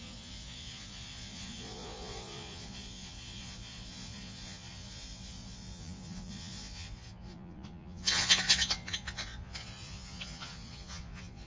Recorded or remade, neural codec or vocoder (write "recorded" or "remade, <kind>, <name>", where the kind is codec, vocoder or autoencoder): remade, vocoder, Vocos